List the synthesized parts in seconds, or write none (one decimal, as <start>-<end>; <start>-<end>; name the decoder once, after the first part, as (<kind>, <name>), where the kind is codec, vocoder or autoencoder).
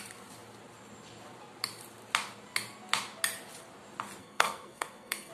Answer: 4.2-5.3 (codec, SNAC)